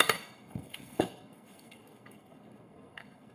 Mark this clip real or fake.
fake